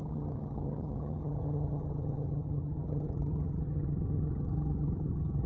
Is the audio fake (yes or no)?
yes